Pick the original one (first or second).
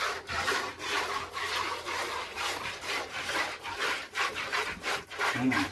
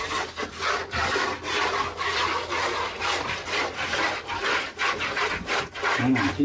second